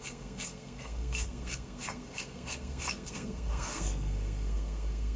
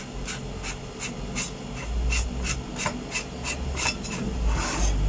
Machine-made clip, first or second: first